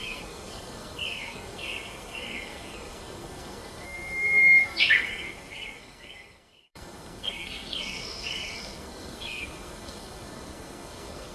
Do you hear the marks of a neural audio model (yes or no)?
yes